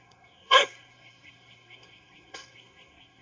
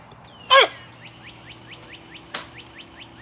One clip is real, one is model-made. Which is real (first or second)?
second